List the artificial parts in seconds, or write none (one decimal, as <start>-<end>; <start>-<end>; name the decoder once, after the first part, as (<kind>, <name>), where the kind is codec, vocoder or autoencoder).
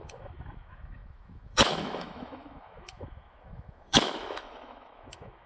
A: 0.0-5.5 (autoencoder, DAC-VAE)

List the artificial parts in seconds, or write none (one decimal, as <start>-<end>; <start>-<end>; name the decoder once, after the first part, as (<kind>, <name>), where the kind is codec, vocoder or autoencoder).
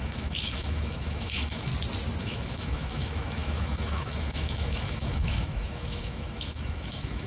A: 0.0-1.7 (autoencoder, DAC-VAE); 2.2-7.3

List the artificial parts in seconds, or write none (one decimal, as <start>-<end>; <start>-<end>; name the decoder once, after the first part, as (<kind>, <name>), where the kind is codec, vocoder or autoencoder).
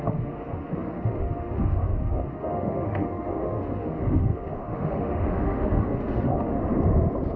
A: 0.0-6.6 (autoencoder, DAC-VAE)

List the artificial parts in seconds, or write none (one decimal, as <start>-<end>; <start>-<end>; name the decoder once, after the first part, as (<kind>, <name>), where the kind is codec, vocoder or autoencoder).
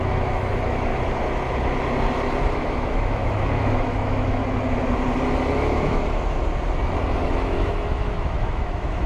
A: 0.0-0.9 (autoencoder, DAC-VAE); 2.4-4.4; 5.5-6.4; 7.2-9.1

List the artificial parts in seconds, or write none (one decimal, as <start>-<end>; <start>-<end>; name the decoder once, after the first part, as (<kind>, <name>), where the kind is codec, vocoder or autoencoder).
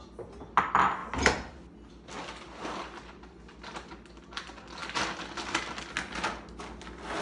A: none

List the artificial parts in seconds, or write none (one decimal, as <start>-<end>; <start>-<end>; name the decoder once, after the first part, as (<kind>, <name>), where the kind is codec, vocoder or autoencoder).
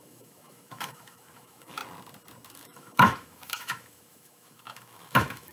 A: 0.0-1.8 (autoencoder, DAC-VAE); 2.5-5.5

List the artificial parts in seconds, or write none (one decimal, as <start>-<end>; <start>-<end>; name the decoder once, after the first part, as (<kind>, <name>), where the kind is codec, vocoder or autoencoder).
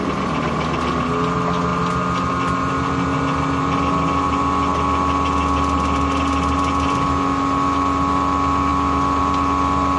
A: none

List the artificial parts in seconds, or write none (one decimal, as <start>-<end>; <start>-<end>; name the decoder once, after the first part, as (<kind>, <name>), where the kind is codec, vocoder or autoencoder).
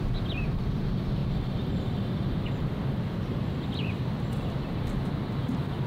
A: none